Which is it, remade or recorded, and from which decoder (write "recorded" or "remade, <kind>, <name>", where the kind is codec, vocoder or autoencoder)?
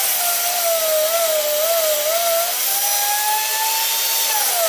recorded